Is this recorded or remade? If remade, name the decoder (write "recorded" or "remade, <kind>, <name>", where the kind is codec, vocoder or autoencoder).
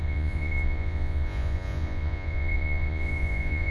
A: remade, vocoder, Vocos